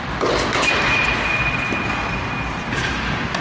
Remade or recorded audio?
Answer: recorded